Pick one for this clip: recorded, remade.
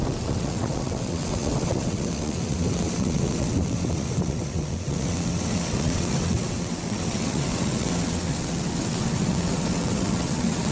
remade